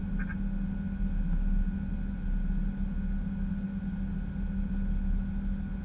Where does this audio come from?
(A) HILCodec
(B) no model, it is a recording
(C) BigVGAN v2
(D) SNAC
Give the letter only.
B